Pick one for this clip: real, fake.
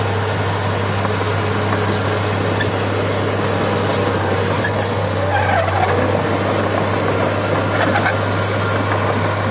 real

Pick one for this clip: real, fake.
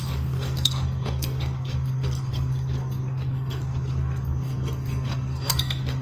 fake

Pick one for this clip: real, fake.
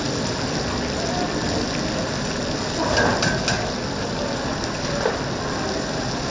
real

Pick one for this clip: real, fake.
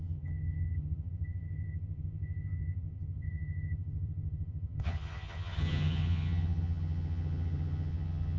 fake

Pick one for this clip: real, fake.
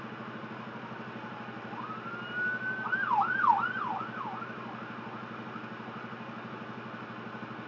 real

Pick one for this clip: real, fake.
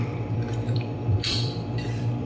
fake